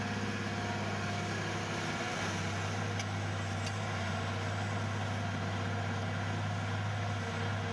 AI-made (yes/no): no